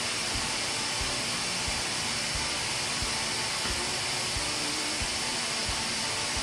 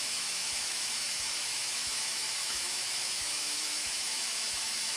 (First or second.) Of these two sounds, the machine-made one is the second